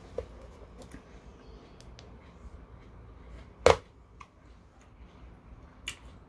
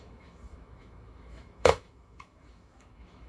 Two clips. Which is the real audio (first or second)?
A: first